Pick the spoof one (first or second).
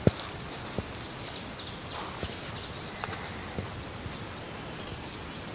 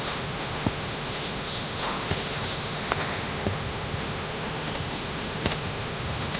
second